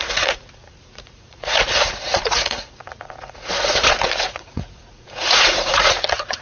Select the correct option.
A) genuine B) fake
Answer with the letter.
B